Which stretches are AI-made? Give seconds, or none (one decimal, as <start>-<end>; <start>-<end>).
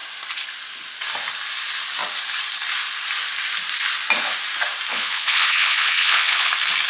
4.9-6.5